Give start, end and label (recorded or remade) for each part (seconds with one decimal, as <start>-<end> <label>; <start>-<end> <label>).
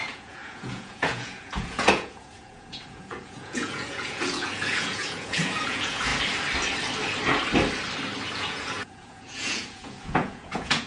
0.0-6.1 remade; 6.1-8.3 recorded; 8.3-10.9 remade